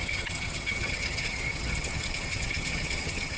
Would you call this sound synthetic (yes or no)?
yes